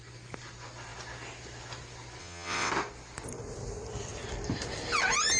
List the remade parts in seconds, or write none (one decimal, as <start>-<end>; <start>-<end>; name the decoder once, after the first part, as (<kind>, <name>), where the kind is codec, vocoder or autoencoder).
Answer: 2.2-2.7 (vocoder, WaveNeXt)